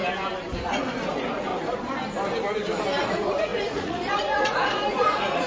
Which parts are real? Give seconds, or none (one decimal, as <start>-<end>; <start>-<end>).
0.0-0.6; 1.5-3.0